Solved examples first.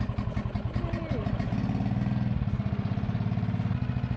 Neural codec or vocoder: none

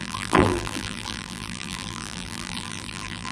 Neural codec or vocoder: vocoder, BigVGAN v2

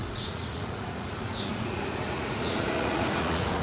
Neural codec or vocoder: vocoder, Vocos